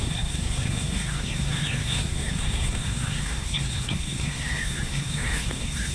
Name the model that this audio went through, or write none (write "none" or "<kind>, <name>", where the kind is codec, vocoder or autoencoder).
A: codec, SNAC